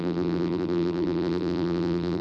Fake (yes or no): yes